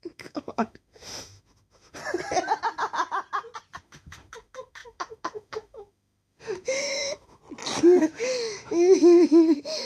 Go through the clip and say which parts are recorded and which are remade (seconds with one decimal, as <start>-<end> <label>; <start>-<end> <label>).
0.0-2.0 remade; 2.0-3.8 recorded; 3.8-7.4 remade; 7.4-8.0 recorded; 8.0-9.9 remade